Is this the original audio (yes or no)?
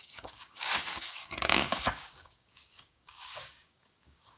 no